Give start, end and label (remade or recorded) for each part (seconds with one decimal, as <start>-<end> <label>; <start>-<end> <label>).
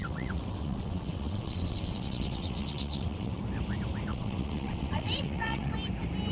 0.0-3.4 remade; 3.4-4.1 recorded; 4.1-5.7 remade; 5.7-6.3 recorded